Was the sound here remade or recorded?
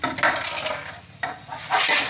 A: recorded